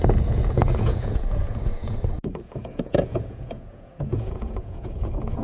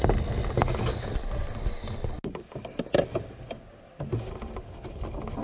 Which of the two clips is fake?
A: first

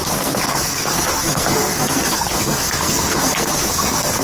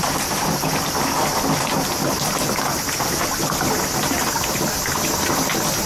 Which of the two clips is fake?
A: first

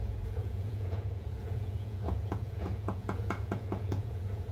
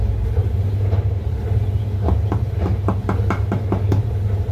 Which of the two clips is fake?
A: first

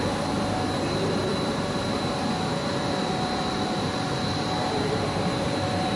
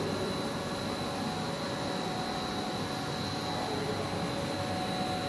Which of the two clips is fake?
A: first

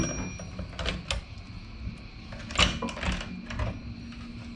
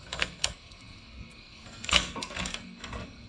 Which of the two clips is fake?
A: second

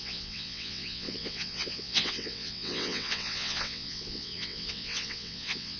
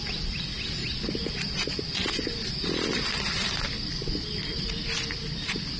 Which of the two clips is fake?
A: first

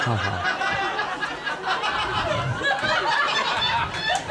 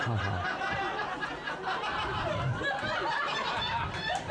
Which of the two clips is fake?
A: second